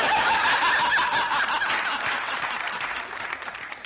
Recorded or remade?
recorded